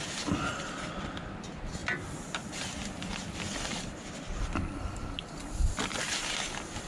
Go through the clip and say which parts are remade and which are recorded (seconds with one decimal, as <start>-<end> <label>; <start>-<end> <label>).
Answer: 0.0-6.9 recorded